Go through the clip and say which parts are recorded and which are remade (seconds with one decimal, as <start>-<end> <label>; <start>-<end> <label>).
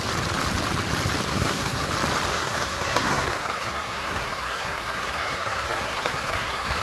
0.0-1.3 recorded; 1.3-1.9 remade; 1.9-2.3 recorded; 2.3-6.8 remade